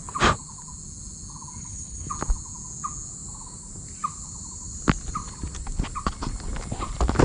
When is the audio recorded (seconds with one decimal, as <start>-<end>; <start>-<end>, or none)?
0.0-1.6; 2.1-7.2